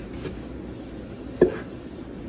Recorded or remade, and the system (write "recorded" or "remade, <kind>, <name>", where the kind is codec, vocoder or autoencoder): recorded